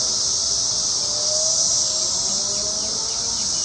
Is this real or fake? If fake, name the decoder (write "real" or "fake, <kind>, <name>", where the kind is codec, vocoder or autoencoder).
real